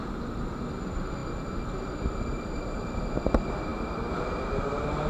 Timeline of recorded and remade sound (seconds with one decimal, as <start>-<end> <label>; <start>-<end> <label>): 0.0-5.1 recorded